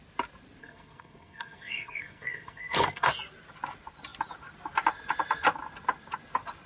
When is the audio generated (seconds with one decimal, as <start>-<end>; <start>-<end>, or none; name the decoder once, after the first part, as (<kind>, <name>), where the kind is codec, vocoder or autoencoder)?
0.6-3.1 (codec, SNAC)